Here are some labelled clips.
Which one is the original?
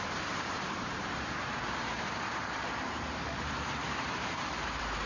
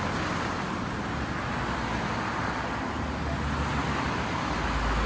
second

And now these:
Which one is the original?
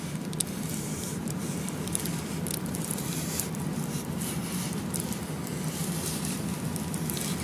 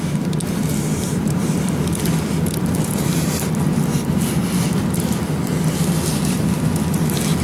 second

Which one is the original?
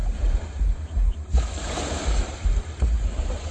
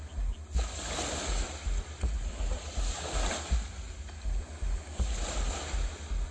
second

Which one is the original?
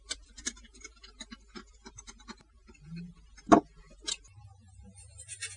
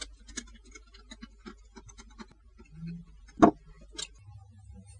second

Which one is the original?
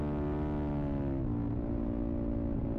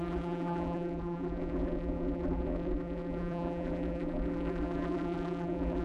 first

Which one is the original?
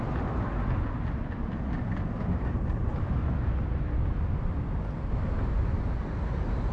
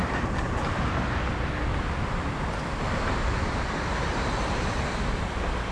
first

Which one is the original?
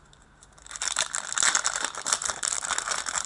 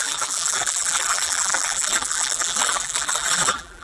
first